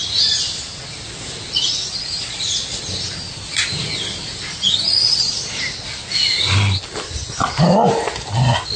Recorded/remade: recorded